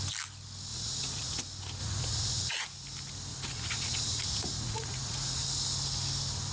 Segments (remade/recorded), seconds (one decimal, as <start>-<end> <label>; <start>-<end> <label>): 0.0-0.7 recorded; 0.7-1.4 remade; 1.4-1.8 recorded; 1.8-2.5 remade; 2.5-3.3 recorded; 3.3-5.4 remade; 5.4-6.5 recorded